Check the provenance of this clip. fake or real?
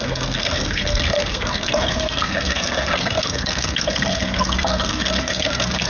fake